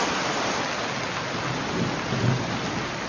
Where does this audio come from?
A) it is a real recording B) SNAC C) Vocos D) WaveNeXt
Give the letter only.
A